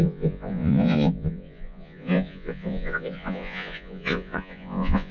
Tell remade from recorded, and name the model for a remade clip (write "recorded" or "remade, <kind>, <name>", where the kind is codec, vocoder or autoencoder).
remade, vocoder, Vocos